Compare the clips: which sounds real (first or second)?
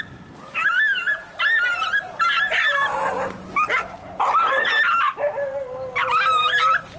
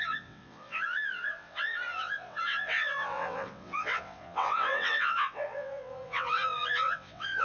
first